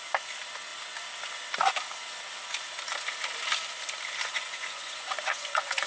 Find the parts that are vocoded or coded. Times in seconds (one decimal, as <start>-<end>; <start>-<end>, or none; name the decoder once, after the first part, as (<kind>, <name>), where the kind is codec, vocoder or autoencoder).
4.3-5.9 (vocoder, Vocos)